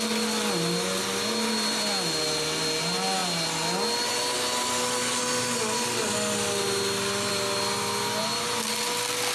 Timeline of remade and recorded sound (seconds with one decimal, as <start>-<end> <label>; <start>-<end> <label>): 0.0-9.3 recorded